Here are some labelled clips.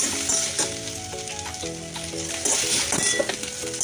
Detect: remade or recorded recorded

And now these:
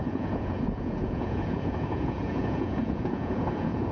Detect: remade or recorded remade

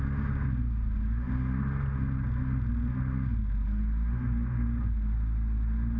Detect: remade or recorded recorded